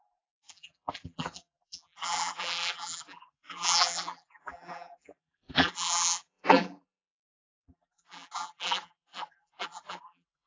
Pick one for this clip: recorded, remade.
remade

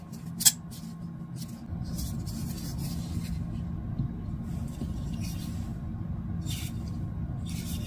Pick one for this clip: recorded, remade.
recorded